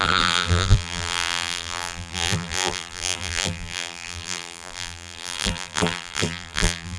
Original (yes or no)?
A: no